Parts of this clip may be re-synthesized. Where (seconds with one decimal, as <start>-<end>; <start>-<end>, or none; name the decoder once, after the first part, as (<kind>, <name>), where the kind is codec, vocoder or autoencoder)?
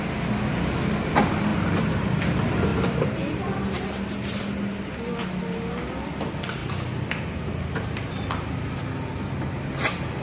2.7-4.4 (vocoder, BigVGAN v2)